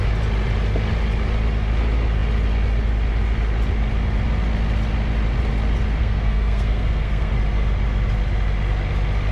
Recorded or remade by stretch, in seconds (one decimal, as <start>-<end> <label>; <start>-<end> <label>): 0.0-6.0 recorded; 6.0-7.3 remade; 7.3-9.3 recorded